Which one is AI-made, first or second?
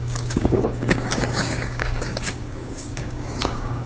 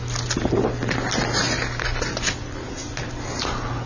first